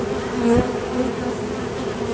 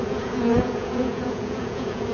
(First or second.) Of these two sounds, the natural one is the first